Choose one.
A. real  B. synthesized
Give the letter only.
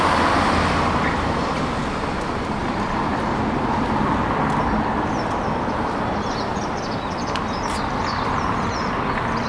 A